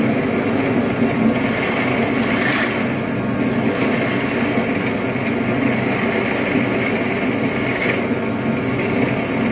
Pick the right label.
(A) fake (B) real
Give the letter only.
B